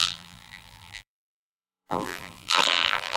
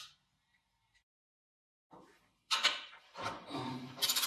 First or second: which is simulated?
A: first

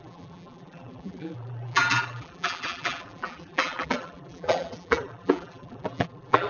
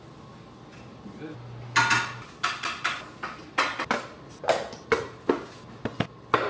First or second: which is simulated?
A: first